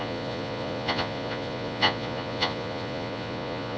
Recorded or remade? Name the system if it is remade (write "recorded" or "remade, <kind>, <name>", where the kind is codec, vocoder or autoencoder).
remade, vocoder, Vocos